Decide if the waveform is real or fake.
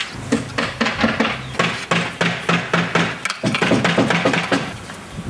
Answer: real